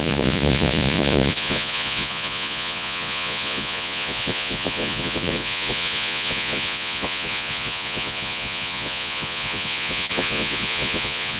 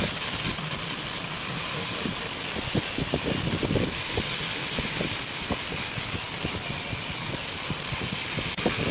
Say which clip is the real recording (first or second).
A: second